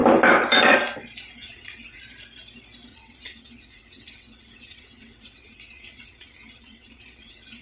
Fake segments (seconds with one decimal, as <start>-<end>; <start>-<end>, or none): 1.4-2.0; 2.9-7.6